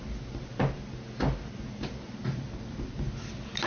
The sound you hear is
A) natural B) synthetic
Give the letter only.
A